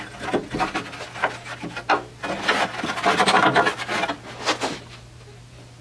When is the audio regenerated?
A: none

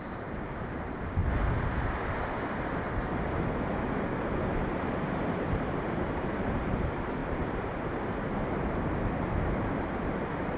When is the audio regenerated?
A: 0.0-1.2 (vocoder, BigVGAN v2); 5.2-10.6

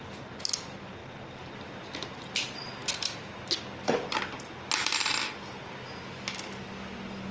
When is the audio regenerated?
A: none